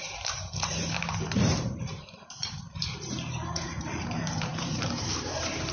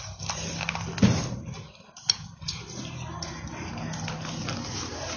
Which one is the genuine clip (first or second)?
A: second